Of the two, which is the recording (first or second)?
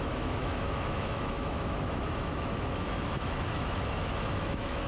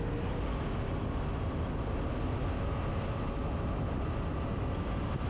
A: second